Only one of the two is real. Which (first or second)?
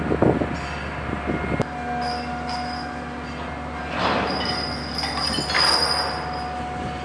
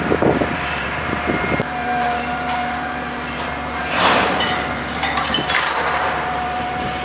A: first